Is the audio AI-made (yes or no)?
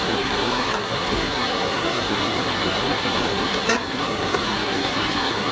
yes